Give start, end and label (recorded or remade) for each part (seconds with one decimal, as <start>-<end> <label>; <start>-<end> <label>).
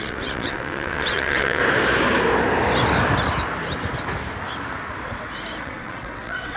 0.0-1.6 remade; 1.6-5.6 recorded; 5.6-6.6 remade